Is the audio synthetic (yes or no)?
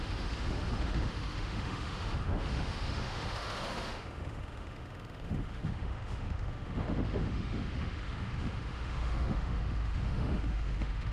yes